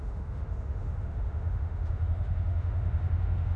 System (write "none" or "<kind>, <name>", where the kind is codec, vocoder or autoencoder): autoencoder, DAC-VAE